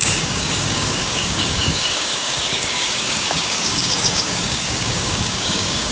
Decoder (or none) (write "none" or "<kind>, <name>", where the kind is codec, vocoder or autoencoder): codec, DAC